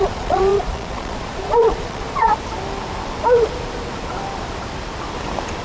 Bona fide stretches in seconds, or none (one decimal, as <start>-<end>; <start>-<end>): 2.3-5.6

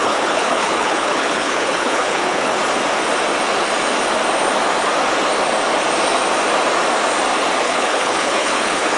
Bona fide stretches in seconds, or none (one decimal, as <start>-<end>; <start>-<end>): 2.6-7.6

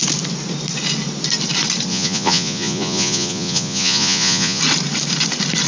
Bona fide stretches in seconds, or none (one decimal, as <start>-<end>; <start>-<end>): 0.0-1.9; 4.6-5.7